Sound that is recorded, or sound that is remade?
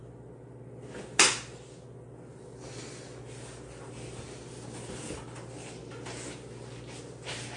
recorded